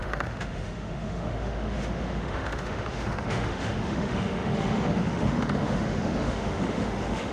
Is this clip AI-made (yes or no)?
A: yes